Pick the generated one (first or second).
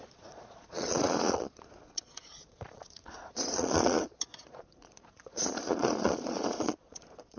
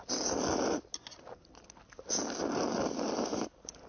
first